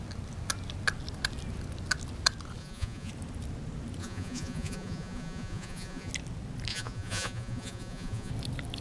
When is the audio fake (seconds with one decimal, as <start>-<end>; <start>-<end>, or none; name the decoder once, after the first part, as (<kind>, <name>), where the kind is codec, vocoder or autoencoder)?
2.6-3.1 (vocoder, Vocos); 4.0-6.1; 6.7-8.3